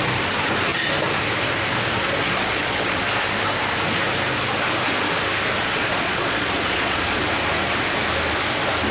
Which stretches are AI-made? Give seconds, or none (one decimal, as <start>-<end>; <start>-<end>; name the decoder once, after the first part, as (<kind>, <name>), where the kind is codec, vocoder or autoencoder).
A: 2.2-3.0 (vocoder, Vocos); 5.6-7.2